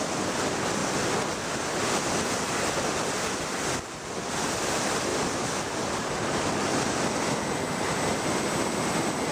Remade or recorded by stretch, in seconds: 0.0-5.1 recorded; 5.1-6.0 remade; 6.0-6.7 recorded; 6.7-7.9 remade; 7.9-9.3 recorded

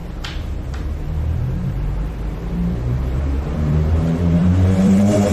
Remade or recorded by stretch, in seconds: 0.0-5.3 remade